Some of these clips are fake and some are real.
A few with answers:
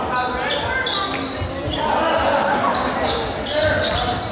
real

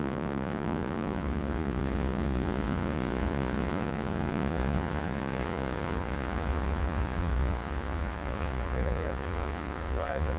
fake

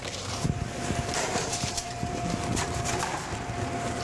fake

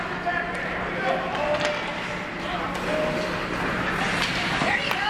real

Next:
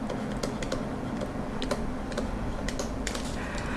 real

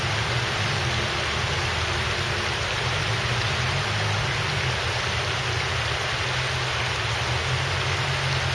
real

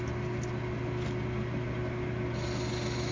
real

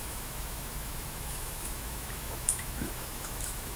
fake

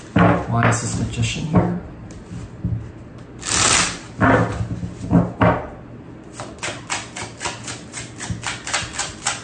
real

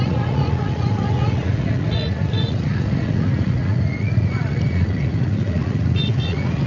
fake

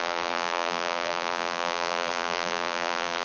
fake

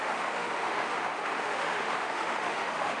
fake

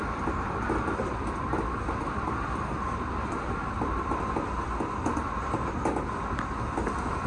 real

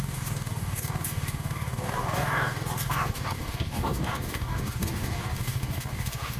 fake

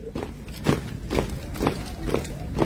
real